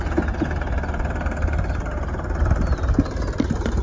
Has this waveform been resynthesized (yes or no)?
no